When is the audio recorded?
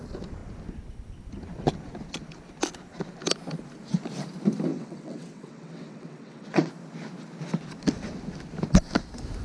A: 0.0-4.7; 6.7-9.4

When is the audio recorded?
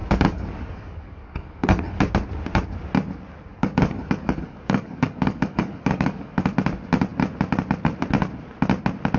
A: 2.0-3.5; 6.4-9.2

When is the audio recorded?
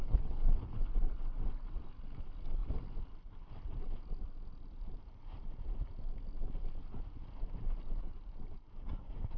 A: 0.9-9.4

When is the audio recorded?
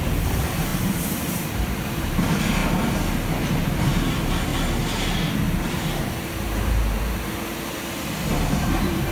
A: 2.6-3.5; 4.5-5.7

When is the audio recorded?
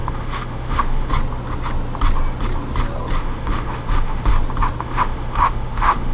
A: 1.1-3.2; 4.3-4.8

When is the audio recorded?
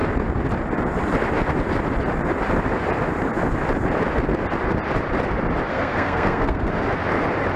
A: 0.0-5.7; 6.7-7.6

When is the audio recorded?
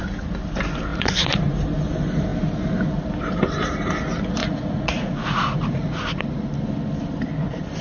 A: 0.0-0.9; 1.4-4.4; 6.2-7.8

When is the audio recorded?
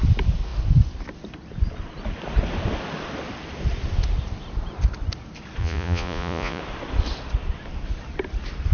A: 0.0-5.6; 6.6-8.7